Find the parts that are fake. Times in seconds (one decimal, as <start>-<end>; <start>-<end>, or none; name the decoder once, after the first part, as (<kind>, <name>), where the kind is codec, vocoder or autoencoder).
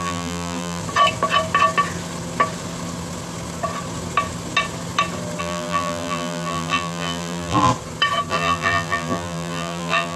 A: 0.0-0.8 (vocoder, BigVGAN v2); 5.4-7.7; 8.3-10.2